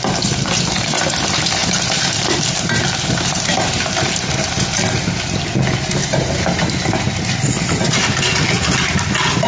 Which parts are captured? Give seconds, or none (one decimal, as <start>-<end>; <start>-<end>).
0.0-1.6; 4.5-6.0; 6.7-9.5